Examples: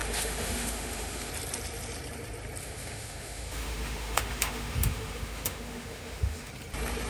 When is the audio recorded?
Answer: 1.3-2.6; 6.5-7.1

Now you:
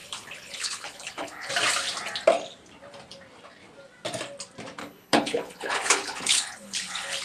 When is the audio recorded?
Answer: 1.5-4.8